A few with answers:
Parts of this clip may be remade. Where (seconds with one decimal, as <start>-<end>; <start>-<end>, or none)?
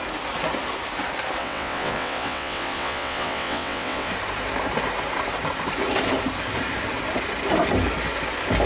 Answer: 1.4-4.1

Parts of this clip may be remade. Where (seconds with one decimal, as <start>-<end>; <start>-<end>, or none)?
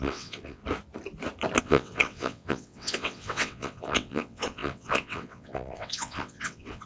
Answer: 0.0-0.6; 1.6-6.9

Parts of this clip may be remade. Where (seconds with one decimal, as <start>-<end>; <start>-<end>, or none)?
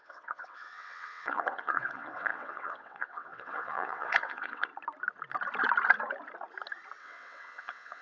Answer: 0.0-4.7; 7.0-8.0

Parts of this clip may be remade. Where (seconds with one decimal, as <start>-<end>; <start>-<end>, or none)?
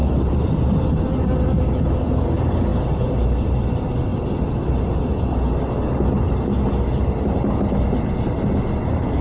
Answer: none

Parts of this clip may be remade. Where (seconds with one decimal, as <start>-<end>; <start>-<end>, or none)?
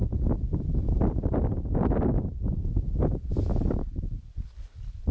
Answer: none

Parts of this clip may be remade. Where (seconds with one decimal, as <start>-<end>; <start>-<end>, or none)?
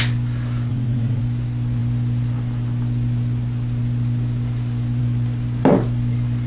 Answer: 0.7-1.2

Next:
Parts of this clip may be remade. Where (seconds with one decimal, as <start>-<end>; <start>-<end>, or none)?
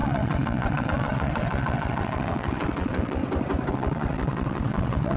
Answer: 0.0-3.2; 3.7-5.2